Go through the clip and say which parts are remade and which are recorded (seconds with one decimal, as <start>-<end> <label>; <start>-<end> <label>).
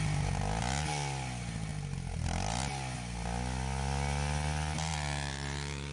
0.0-5.9 recorded